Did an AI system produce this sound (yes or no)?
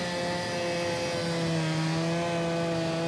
no